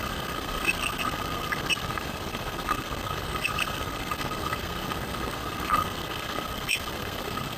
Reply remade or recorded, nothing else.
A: remade